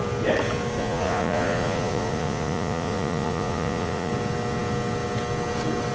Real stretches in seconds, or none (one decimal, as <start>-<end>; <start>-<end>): 0.0-0.8; 4.1-5.9